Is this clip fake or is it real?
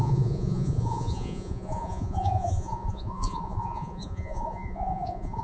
fake